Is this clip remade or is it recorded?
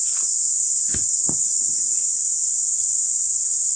recorded